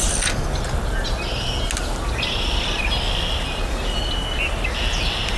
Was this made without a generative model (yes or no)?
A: yes